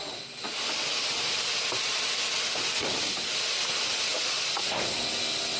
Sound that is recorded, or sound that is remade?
recorded